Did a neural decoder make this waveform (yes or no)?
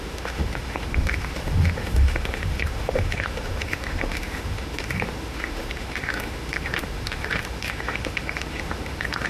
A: yes